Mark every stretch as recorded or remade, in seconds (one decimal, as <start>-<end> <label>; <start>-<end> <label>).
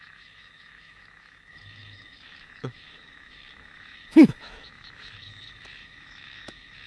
0.0-6.9 remade